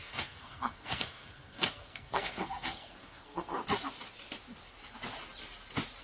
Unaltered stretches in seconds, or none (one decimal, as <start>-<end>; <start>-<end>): 3.6-6.0